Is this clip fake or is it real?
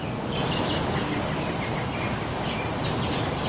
real